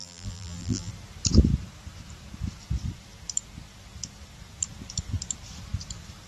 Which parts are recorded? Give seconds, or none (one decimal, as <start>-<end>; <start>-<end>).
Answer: 0.9-6.3